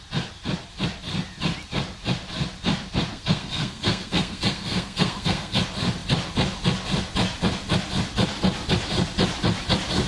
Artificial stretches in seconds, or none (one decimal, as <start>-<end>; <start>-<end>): 3.1-5.6